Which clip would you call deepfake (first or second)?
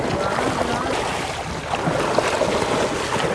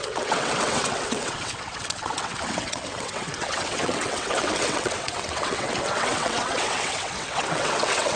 second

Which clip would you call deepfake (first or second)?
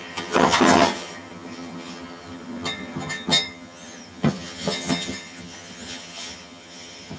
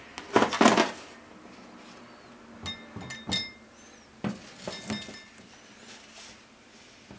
first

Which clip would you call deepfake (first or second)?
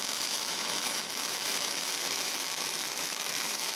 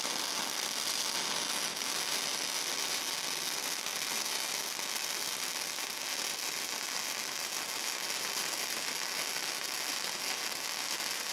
first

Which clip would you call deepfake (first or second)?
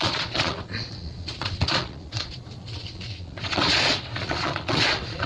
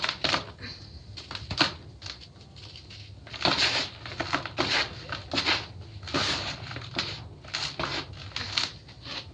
first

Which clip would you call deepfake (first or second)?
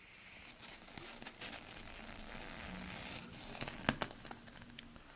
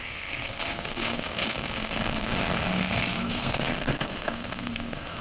second